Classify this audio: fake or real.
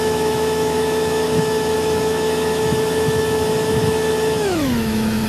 fake